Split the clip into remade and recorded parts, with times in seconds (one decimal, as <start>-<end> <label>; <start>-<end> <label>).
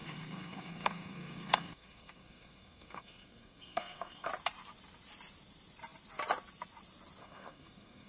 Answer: 0.0-4.3 remade; 4.3-7.2 recorded; 7.2-8.1 remade